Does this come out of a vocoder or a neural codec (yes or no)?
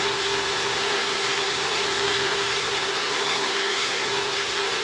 yes